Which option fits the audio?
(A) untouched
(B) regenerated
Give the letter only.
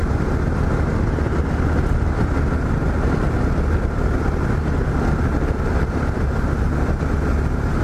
A